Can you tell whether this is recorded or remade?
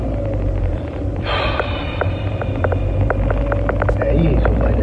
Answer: recorded